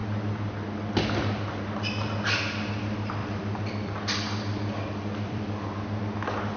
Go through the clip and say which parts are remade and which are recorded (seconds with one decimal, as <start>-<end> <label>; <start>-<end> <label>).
0.0-3.2 recorded; 3.2-6.0 remade; 6.0-6.6 recorded